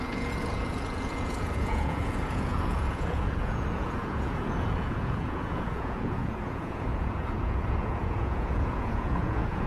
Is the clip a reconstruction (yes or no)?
yes